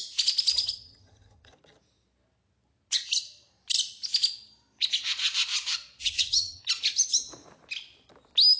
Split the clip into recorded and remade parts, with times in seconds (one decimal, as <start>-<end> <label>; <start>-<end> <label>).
0.0-0.5 recorded; 0.5-1.5 remade; 1.5-6.0 recorded; 6.0-6.6 remade; 6.6-8.6 recorded